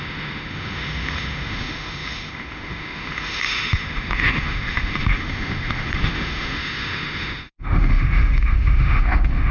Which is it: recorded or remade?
remade